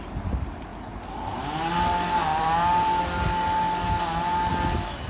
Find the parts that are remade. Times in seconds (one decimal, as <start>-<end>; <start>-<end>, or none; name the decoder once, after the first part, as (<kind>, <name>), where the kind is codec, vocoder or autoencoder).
none